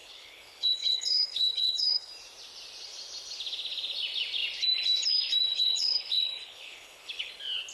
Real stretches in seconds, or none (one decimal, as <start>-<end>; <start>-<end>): 2.1-5.5; 7.3-7.7